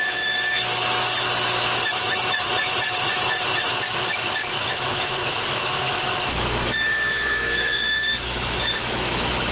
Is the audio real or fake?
fake